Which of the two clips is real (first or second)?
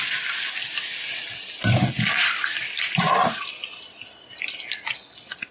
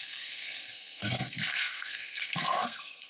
first